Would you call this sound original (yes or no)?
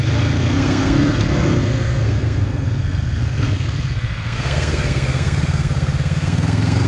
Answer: no